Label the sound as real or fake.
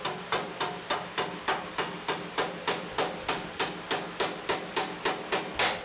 real